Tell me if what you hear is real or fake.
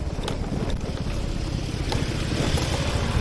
fake